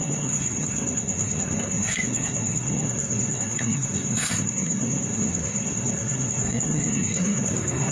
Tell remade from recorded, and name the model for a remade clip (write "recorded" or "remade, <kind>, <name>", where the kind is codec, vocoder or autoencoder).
remade, codec, SNAC